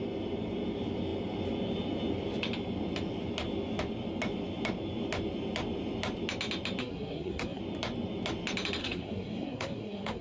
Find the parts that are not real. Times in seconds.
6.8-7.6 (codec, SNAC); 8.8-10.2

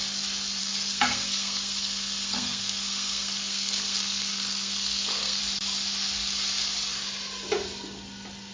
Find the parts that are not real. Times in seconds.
0.6-5.4 (codec, SNAC)

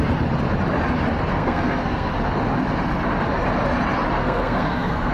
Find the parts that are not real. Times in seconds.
1.3-2.1 (codec, SNAC); 4.2-5.1

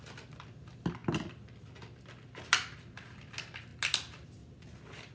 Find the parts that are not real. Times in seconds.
none

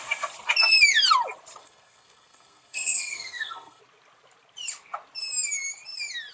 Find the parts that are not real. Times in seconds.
1.6-3.8 (codec, SNAC)